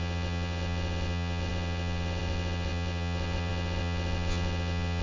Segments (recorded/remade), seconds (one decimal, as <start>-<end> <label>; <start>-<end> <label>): 0.0-5.0 remade